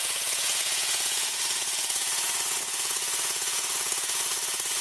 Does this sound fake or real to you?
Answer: fake